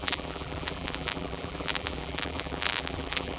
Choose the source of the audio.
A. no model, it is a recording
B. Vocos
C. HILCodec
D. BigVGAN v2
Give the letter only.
D